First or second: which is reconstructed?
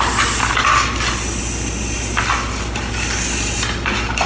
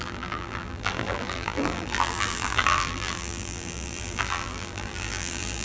second